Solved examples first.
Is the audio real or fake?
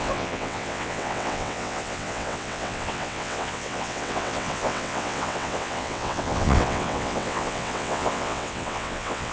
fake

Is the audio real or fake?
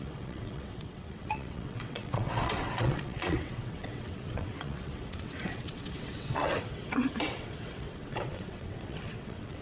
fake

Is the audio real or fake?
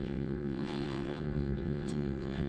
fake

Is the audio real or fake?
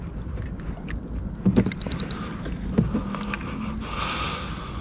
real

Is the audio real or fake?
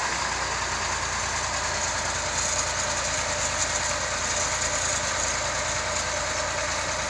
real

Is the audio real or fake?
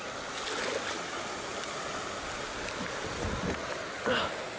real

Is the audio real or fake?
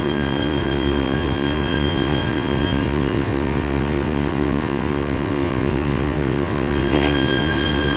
fake